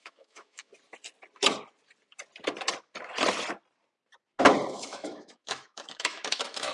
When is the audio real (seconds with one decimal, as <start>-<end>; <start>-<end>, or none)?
0.7-4.7